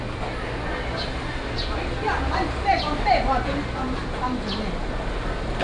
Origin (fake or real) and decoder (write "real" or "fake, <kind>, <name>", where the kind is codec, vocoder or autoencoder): real